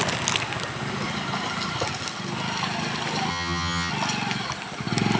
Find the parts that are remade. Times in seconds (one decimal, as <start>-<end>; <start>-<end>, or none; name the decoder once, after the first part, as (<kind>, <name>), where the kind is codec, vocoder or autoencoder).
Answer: 3.3-3.9 (vocoder, HiFi-GAN)